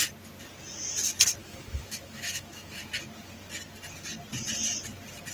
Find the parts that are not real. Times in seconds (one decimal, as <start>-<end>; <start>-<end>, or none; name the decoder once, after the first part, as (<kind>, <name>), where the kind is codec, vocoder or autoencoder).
1.4-2.9 (autoencoder, DAC-VAE)